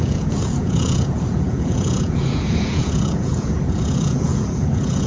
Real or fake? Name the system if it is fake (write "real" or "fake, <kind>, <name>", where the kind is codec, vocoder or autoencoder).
fake, vocoder, Vocos